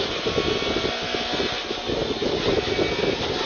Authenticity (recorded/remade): recorded